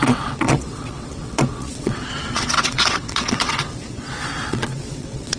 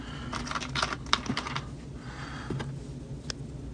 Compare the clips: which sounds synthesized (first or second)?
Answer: first